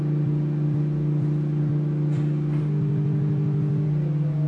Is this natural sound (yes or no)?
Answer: yes